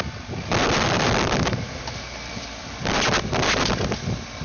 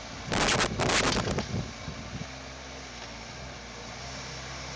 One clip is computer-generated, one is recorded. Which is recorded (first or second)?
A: second